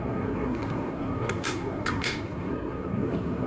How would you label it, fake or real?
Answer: fake